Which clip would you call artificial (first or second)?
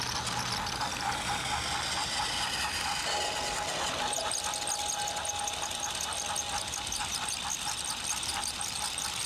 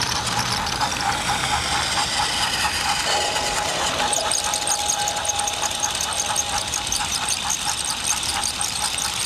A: second